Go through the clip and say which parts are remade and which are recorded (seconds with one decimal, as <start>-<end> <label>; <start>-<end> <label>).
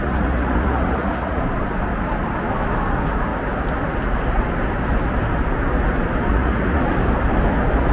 0.0-1.4 remade; 1.4-6.3 recorded; 6.3-6.8 remade; 6.8-7.9 recorded